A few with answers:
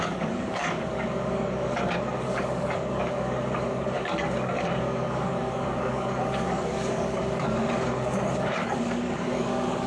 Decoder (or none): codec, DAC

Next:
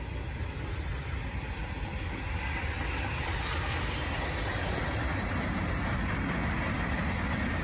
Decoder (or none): none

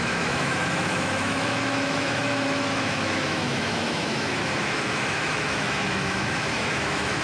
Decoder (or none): autoencoder, DAC-VAE